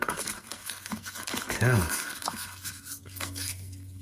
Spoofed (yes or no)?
yes